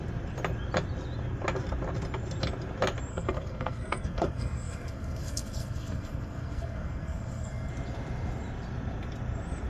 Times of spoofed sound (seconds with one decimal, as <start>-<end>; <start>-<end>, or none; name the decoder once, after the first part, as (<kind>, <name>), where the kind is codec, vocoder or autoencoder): 3.1-7.7 (codec, SNAC)